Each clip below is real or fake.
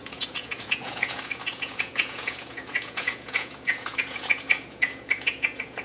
fake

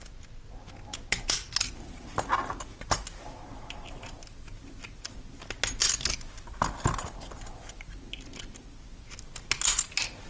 real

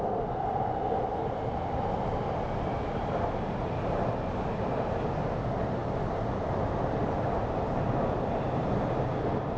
real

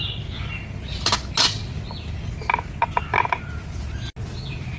real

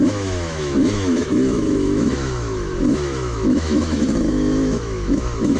fake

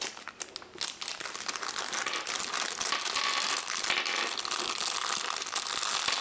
real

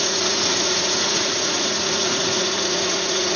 fake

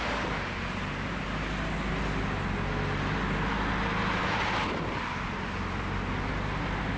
real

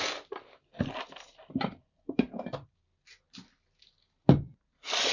real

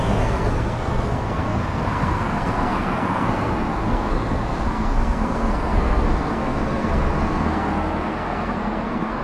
fake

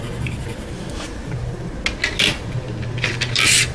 real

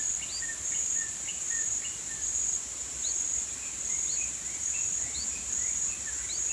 real